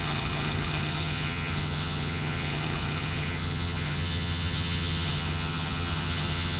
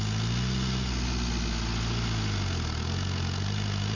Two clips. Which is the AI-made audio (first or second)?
first